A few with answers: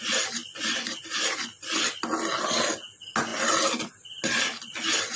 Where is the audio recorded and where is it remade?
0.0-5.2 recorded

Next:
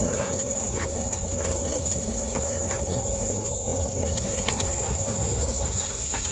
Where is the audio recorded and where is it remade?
0.0-6.3 remade

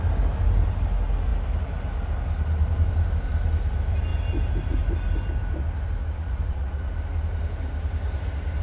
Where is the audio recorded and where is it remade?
0.0-6.0 recorded; 6.0-6.9 remade; 6.9-8.6 recorded

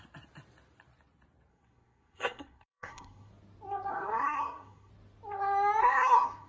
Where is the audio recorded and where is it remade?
0.0-1.5 recorded; 1.5-3.3 remade; 3.3-3.9 recorded; 3.9-4.9 remade; 4.9-5.8 recorded; 5.8-6.5 remade

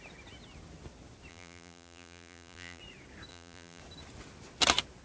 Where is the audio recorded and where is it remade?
0.0-1.3 recorded; 1.3-2.8 remade; 2.8-3.3 recorded; 3.3-3.8 remade; 3.8-5.0 recorded

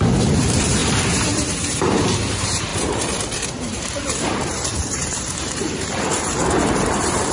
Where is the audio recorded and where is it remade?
0.0-7.3 remade

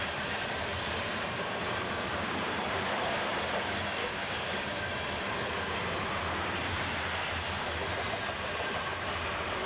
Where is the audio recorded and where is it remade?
0.0-4.0 recorded; 4.0-4.8 remade; 4.8-9.7 recorded

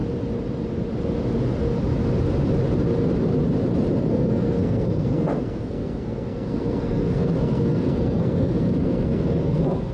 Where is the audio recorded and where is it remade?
0.0-4.1 recorded; 4.1-9.9 remade